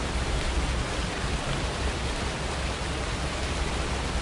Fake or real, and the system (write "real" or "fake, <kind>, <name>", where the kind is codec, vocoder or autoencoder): real